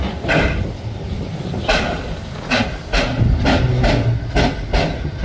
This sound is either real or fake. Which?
real